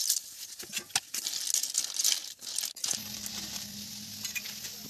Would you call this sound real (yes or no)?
yes